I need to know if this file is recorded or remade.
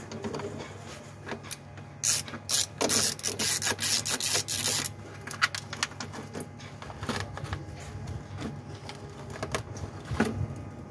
recorded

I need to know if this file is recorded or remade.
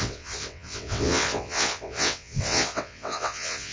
remade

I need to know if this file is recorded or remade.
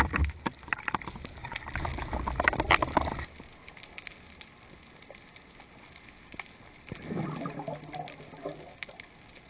recorded